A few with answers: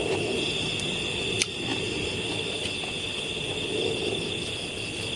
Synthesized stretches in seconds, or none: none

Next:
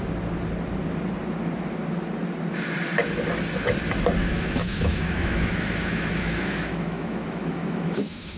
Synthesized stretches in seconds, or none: 4.2-8.4

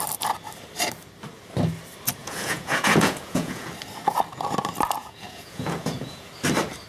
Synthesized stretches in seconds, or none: 2.2-3.7; 5.0-6.3

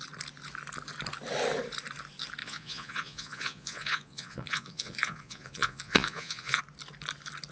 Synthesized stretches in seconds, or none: 2.4-6.6

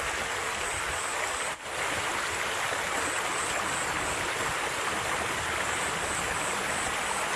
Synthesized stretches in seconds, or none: none

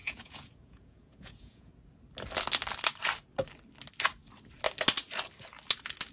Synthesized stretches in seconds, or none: 0.0-1.7

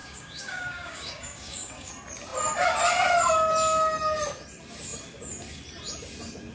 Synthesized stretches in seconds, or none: 0.0-1.9

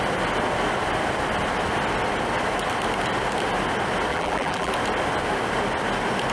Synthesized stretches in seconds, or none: 4.1-4.7